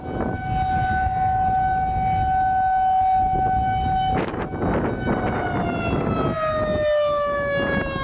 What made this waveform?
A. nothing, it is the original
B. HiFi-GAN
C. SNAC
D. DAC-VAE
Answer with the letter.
A